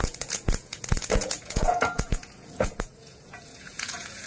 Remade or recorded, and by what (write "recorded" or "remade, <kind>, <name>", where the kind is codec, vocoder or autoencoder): remade, vocoder, Vocos